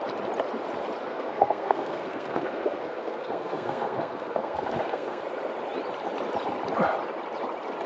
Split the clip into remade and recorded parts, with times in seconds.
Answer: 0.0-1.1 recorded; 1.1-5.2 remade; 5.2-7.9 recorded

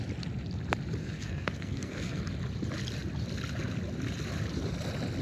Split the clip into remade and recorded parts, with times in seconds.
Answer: 0.0-1.0 recorded; 1.0-2.2 remade; 2.2-5.2 recorded

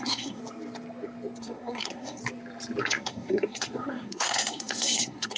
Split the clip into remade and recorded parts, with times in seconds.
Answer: 0.0-0.4 remade; 0.4-1.4 recorded; 1.4-2.2 remade; 2.2-2.8 recorded; 2.8-5.4 remade